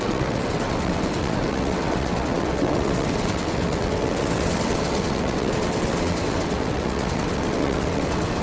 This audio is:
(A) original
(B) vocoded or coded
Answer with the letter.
B